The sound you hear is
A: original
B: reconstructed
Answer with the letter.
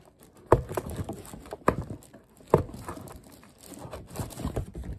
A